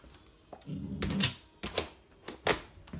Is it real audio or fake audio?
real